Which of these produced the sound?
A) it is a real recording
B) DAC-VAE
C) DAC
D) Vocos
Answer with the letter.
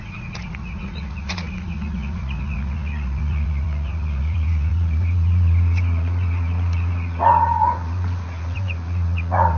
D